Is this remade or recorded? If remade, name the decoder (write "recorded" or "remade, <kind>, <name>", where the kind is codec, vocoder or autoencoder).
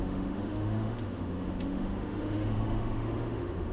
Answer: remade, autoencoder, DAC-VAE